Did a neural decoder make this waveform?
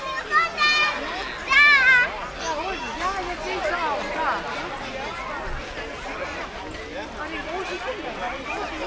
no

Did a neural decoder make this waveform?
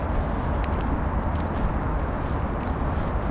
no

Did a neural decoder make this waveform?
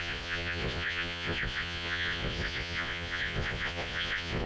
yes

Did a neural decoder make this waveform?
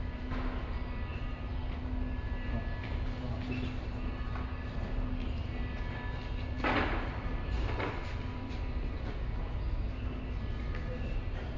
no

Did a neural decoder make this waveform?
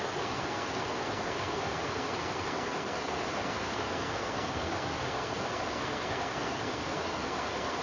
yes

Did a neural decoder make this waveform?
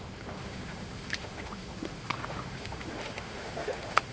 yes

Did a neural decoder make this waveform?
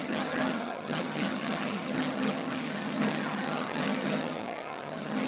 yes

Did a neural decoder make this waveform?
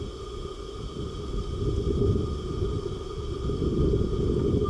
no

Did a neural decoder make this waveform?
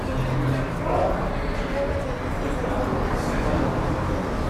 no